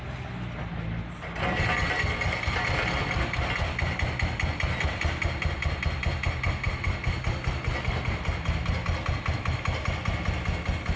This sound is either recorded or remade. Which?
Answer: recorded